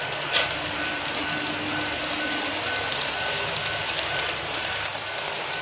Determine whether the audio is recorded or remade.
recorded